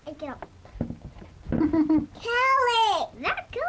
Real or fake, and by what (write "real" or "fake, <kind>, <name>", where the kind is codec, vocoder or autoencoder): real